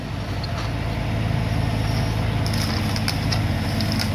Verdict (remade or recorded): recorded